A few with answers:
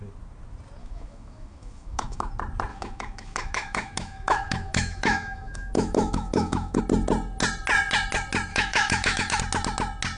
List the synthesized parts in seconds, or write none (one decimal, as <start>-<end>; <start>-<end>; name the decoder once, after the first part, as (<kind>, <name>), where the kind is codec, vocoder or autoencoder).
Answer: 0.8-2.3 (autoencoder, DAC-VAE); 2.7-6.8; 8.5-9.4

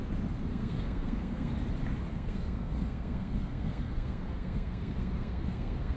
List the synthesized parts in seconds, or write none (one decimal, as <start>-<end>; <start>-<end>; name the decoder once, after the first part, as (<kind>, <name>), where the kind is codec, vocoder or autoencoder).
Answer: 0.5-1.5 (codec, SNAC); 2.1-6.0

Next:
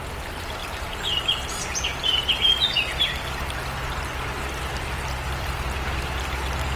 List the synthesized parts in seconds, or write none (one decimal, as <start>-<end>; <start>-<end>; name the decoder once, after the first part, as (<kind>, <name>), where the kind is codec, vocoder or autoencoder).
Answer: none

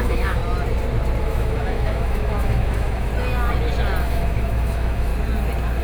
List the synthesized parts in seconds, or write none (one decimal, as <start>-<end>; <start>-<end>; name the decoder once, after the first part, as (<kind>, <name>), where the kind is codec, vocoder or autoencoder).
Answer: 0.0-0.4 (autoencoder, DAC-VAE); 1.2-3.1; 4.0-5.1

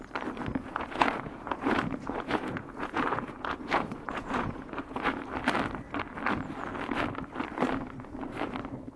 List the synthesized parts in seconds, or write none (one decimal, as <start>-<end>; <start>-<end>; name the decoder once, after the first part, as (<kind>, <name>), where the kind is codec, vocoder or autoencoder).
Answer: 0.5-5.2 (vocoder, Vocos)

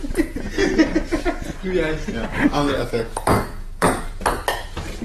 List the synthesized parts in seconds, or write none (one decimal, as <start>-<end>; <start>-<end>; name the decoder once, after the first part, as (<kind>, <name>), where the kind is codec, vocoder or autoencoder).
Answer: 2.3-4.1 (codec, DAC)

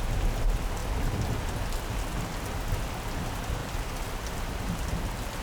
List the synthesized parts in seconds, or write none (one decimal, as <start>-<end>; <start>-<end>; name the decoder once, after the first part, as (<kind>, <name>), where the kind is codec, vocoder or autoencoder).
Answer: none